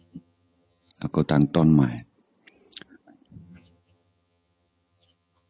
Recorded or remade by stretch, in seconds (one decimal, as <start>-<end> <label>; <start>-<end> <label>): 0.0-0.9 remade; 0.9-3.4 recorded; 3.4-5.5 remade

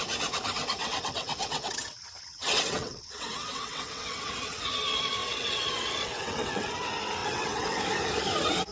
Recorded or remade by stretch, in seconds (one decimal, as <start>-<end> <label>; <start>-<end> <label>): 0.0-0.8 recorded; 0.8-4.7 remade; 4.7-5.2 recorded; 5.2-6.7 remade; 6.7-7.2 recorded; 7.2-7.8 remade; 7.8-8.7 recorded

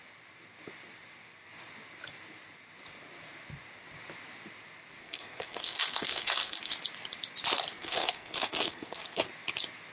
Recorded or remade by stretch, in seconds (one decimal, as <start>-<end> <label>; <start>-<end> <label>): 0.0-5.0 recorded; 5.0-6.7 remade; 6.7-7.7 recorded; 7.7-9.3 remade; 9.3-9.9 recorded

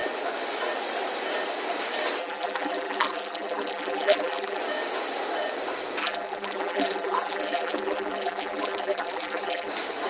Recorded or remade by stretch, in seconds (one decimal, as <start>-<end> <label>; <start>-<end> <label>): 0.0-2.2 recorded; 2.2-4.6 remade; 4.6-6.0 recorded; 6.0-9.7 remade; 9.7-10.1 recorded

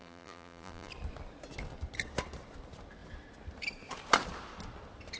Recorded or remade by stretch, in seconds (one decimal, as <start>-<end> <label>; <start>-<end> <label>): 0.0-0.9 remade; 0.9-5.2 recorded

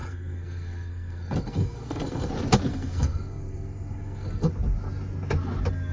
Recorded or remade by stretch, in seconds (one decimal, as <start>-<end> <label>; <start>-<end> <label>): 0.0-2.3 remade; 2.3-2.7 recorded; 2.7-4.5 remade; 4.5-5.9 recorded

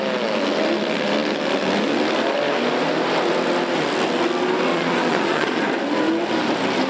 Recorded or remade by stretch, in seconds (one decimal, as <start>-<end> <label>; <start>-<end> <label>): 0.0-4.7 recorded; 4.7-5.6 remade; 5.6-6.9 recorded